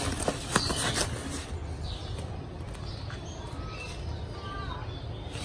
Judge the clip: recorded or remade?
recorded